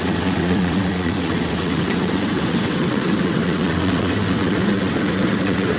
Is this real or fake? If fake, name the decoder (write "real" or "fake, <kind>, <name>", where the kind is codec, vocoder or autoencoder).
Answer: fake, vocoder, WaveNeXt